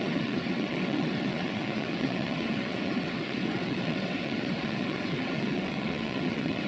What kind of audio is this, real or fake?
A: fake